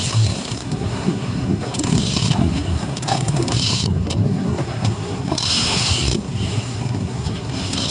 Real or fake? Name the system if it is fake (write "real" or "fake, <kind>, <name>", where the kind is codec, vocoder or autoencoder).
fake, codec, SNAC